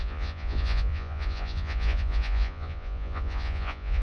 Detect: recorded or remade remade